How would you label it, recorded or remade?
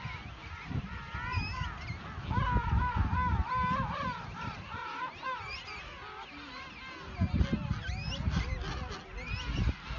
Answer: recorded